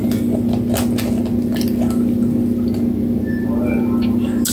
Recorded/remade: recorded